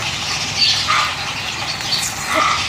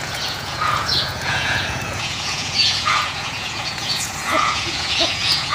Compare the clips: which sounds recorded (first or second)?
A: first